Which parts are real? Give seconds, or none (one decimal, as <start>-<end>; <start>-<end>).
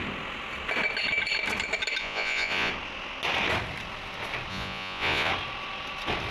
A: 0.0-2.0; 2.7-4.5; 5.3-6.3